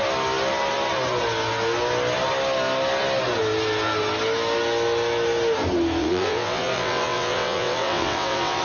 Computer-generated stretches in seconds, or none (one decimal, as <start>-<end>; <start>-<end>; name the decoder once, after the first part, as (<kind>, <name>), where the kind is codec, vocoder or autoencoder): 6.0-8.6 (vocoder, WaveNeXt)